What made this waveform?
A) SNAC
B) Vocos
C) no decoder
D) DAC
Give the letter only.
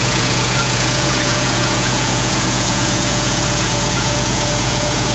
B